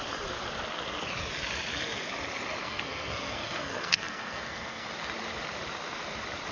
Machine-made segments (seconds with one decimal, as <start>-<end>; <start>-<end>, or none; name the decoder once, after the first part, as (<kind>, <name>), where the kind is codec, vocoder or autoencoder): 2.6-4.9 (codec, SNAC)